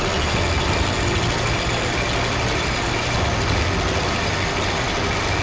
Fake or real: real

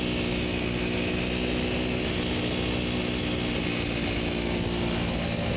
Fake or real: real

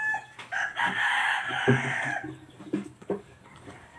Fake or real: fake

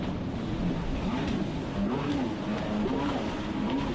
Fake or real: real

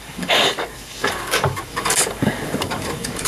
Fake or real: fake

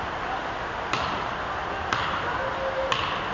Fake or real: real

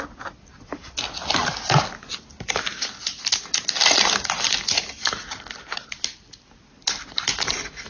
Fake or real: real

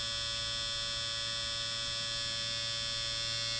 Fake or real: real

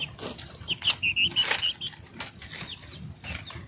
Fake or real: real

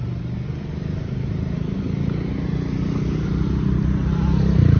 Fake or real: real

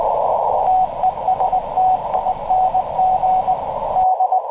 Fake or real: real